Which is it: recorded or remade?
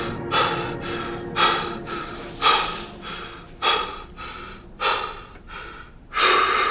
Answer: recorded